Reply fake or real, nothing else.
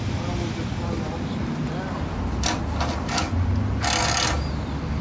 real